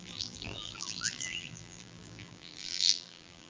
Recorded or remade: remade